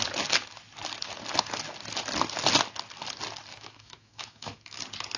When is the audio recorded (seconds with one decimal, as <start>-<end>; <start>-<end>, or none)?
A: 0.0-3.5; 4.8-5.2